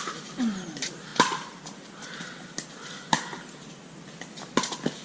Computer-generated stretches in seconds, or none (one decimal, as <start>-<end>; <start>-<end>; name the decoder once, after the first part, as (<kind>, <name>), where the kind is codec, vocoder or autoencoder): 1.1-3.7 (vocoder, BigVGAN v2)